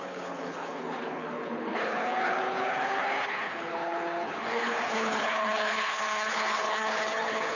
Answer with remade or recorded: remade